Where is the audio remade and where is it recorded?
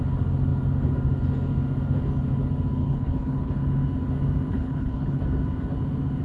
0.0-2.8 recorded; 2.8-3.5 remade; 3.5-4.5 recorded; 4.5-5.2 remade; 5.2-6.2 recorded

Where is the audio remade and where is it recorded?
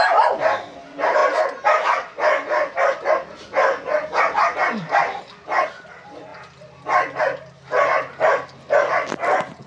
0.0-9.7 recorded